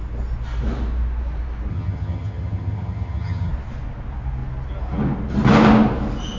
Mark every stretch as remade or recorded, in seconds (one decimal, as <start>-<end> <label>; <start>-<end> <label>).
0.0-1.7 recorded; 1.7-3.5 remade; 3.5-6.4 recorded